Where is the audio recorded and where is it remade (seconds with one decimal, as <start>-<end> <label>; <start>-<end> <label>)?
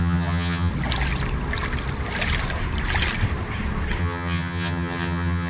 0.0-0.7 remade; 0.7-4.0 recorded; 4.0-5.5 remade